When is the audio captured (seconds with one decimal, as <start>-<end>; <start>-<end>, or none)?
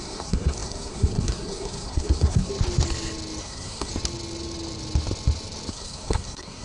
2.5-3.4; 3.9-5.7